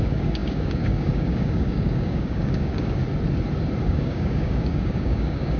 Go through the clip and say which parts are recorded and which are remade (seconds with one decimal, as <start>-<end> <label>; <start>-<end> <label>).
0.0-3.0 remade; 3.0-3.8 recorded; 3.8-5.6 remade